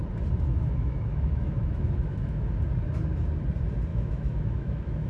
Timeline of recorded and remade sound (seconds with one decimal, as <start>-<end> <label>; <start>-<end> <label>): 0.0-0.5 recorded; 0.5-2.5 remade; 2.5-3.9 recorded; 3.9-5.1 remade